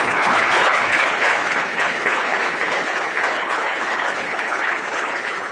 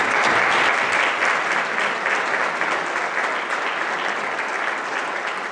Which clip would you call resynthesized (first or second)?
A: first